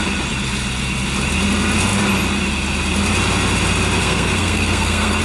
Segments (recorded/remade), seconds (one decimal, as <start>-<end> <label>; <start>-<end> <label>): 0.0-4.0 recorded; 4.0-5.2 remade